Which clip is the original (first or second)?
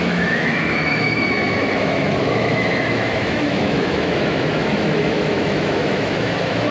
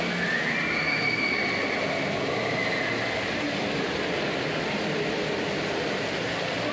second